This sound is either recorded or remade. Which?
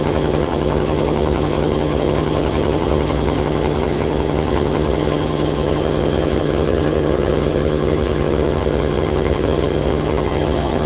remade